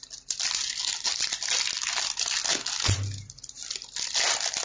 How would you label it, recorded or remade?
recorded